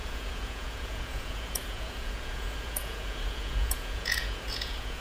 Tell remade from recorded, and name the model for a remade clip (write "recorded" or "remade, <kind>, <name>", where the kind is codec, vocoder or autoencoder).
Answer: remade, vocoder, Vocos